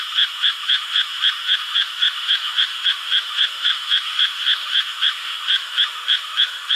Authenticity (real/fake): fake